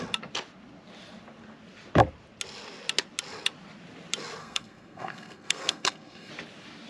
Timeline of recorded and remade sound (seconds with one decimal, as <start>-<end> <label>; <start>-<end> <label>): 0.0-4.4 recorded; 4.4-6.3 remade; 6.3-6.9 recorded